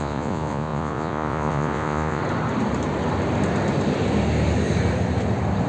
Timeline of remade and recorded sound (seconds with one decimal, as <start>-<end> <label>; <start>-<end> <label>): 0.0-2.2 remade; 2.2-5.7 recorded